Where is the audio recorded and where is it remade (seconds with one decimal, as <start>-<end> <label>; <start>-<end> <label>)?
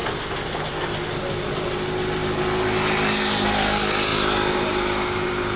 0.0-5.6 recorded